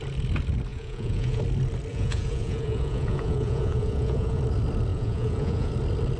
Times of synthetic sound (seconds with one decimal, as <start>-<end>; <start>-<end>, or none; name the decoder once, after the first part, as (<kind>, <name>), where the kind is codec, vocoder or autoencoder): 0.7-1.4 (vocoder, Vocos); 1.9-4.4; 4.9-5.7